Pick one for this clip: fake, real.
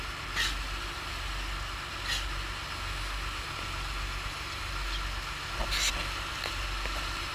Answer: real